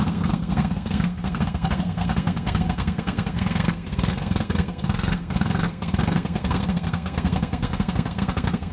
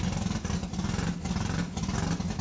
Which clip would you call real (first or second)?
second